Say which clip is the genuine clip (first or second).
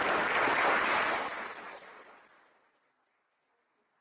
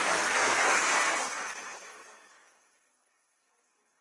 first